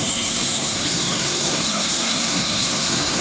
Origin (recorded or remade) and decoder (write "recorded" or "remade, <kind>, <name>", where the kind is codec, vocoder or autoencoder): remade, codec, SNAC